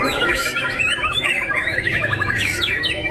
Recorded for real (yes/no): no